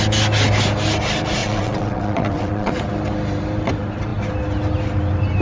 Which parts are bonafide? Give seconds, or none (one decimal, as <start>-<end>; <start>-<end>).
0.0-1.4; 2.7-5.4